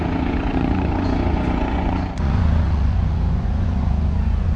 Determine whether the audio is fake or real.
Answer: fake